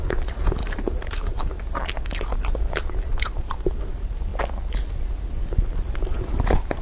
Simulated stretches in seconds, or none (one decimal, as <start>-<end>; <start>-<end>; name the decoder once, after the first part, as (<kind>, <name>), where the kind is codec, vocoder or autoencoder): 0.6-1.5 (vocoder, BigVGAN v2); 3.1-3.7